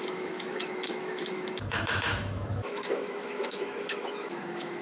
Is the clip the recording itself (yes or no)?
no